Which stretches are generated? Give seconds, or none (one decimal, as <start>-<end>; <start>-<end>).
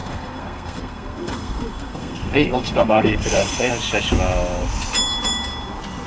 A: 0.0-3.7